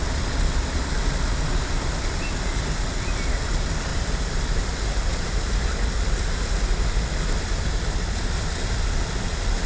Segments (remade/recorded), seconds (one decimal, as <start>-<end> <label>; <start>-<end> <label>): 0.0-3.9 recorded; 3.9-6.1 remade; 6.1-9.7 recorded